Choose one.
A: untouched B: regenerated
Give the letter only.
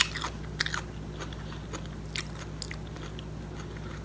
A